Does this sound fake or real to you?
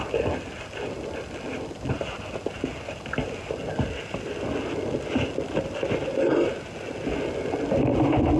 real